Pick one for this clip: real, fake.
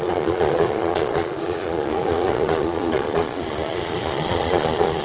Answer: fake